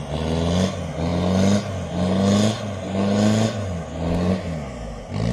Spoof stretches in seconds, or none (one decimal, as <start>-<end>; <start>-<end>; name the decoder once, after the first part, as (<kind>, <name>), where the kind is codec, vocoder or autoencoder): none

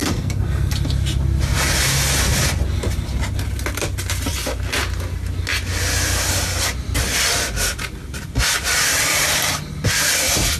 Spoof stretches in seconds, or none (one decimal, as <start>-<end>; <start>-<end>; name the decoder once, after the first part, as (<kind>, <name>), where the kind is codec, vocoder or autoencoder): 0.0-0.7 (codec, SNAC)

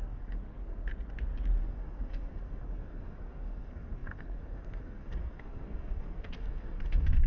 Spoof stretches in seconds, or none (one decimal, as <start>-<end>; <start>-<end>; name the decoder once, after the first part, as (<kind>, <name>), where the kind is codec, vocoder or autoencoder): 0.0-0.9 (codec, SNAC); 1.6-7.3

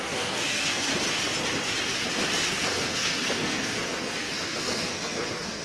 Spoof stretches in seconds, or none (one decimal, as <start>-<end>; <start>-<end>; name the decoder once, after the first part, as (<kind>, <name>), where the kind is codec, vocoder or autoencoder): 0.0-0.9 (codec, SNAC); 2.5-5.6